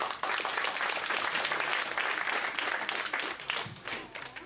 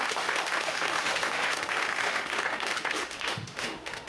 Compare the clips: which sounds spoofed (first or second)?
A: second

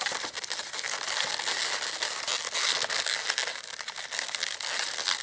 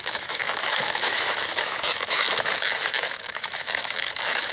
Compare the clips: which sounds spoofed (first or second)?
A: second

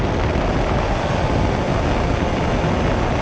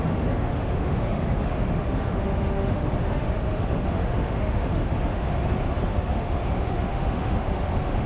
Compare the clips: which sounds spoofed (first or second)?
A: second